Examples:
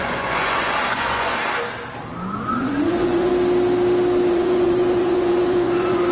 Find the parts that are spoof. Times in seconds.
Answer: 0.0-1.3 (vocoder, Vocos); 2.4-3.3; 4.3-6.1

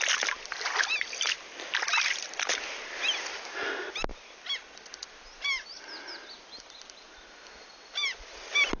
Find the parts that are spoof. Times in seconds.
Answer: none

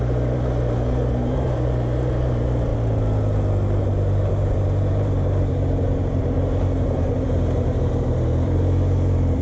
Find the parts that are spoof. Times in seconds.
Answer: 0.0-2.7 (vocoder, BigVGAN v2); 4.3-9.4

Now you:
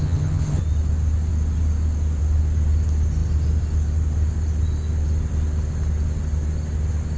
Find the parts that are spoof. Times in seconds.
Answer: 0.0-0.6 (vocoder, HiFi-GAN)